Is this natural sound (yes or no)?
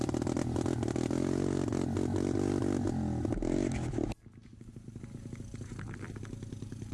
yes